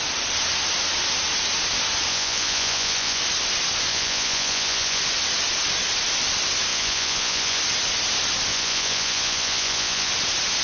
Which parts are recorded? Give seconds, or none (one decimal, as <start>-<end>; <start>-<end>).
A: 0.0-2.1; 3.2-3.9; 5.0-6.7; 7.6-8.5; 10.1-10.6